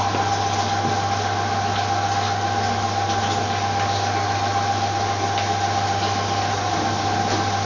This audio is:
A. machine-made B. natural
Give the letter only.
B